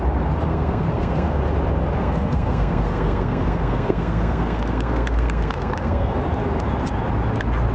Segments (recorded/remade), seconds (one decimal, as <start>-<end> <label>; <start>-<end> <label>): 0.0-0.5 recorded; 0.5-1.4 remade; 1.4-2.0 recorded; 2.0-6.1 remade; 6.1-7.7 recorded

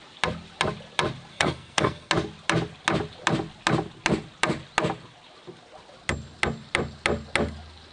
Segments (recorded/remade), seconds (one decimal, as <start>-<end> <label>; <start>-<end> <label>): 0.0-1.3 recorded; 1.3-2.1 remade; 2.1-7.9 recorded

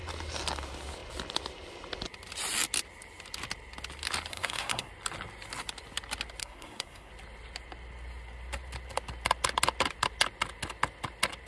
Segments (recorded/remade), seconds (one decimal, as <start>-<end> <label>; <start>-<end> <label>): 0.0-4.3 recorded; 4.3-4.9 remade; 4.9-6.4 recorded; 6.4-7.1 remade; 7.1-11.5 recorded

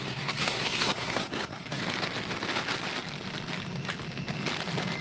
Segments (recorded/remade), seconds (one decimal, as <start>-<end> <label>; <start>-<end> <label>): 0.0-1.8 remade; 1.8-5.0 recorded

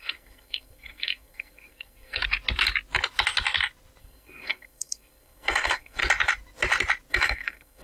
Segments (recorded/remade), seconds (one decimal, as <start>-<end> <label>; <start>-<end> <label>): 0.0-2.2 remade; 2.2-4.0 recorded; 4.0-6.0 remade; 6.0-7.1 recorded; 7.1-7.8 remade

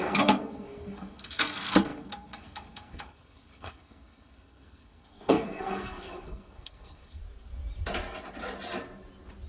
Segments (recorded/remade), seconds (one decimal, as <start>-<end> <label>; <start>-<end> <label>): 0.0-7.2 remade; 7.2-9.5 recorded

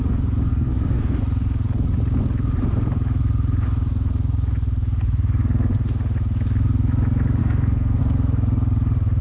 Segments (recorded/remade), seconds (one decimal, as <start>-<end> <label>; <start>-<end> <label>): 0.0-0.5 recorded; 0.5-1.2 remade; 1.2-7.4 recorded; 7.4-8.0 remade; 8.0-9.2 recorded

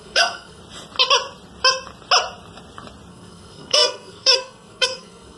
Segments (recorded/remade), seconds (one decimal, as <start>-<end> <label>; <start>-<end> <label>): 0.0-0.6 remade; 0.6-3.1 recorded; 3.1-5.4 remade